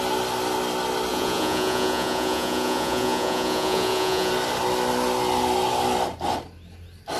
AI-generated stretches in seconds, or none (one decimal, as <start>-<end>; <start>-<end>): 1.1-4.3